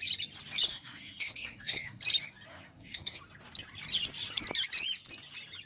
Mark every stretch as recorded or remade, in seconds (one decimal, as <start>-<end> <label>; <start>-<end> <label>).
0.0-0.7 recorded; 0.7-2.0 remade; 2.0-2.5 recorded; 2.5-3.2 remade; 3.2-5.7 recorded